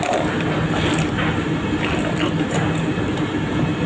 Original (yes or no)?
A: yes